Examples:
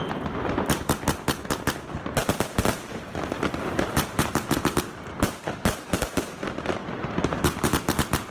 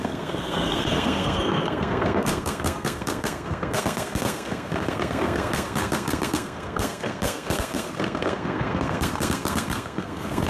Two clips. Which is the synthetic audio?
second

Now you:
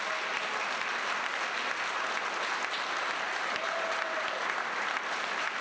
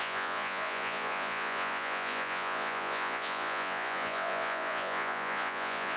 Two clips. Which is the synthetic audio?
second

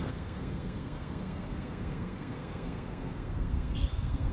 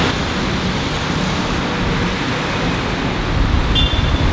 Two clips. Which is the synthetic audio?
first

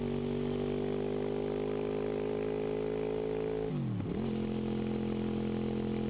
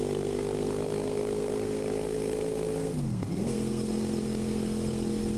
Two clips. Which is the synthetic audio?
second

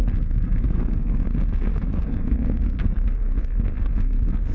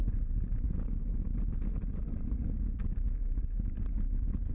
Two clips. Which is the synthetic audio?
first